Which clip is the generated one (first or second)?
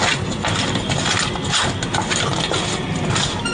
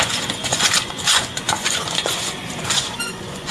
second